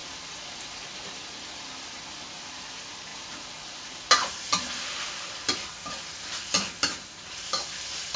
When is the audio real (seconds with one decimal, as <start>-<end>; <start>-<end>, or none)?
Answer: 0.0-8.2